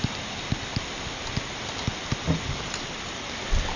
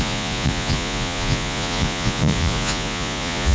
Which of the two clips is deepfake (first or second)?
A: second